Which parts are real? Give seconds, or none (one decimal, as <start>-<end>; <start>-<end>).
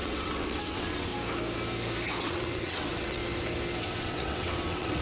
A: 1.1-2.2; 3.2-3.8